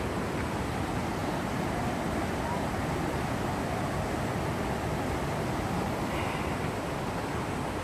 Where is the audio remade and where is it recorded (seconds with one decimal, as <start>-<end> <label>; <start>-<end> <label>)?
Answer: 0.0-7.8 recorded